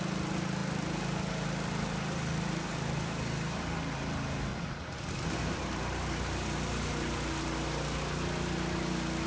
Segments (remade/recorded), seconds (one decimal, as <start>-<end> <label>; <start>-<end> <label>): 0.0-4.5 recorded; 4.5-5.1 remade; 5.1-9.3 recorded